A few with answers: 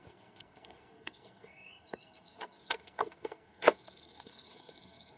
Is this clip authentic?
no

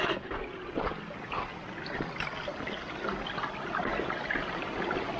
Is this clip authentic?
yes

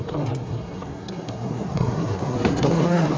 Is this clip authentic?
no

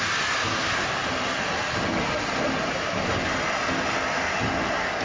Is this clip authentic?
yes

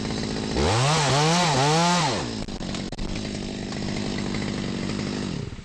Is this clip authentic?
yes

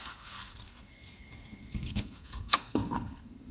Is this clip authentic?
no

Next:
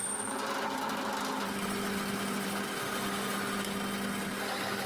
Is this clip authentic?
yes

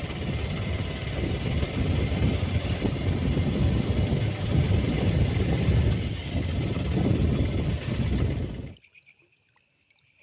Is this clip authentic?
yes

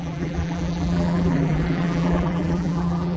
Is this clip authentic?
no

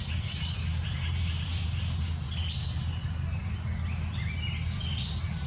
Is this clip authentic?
yes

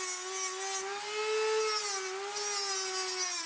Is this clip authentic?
yes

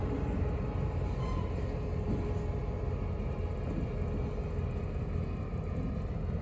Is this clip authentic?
yes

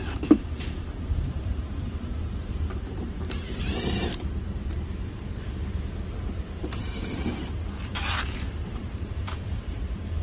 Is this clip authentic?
no